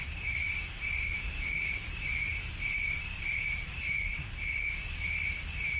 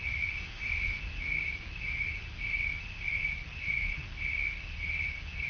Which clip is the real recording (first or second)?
second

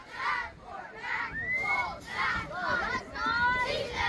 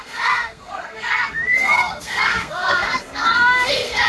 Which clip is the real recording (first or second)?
first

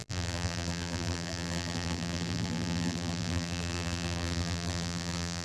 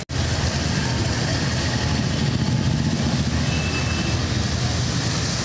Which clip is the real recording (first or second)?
second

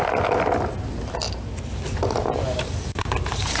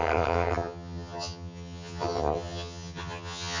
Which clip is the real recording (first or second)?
first